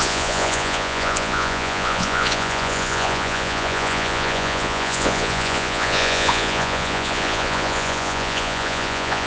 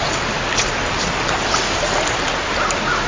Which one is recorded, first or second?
second